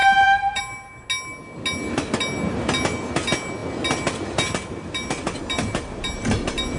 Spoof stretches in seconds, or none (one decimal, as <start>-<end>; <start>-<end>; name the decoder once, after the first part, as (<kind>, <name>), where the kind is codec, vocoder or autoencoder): 0.0-0.6 (vocoder, BigVGAN v2)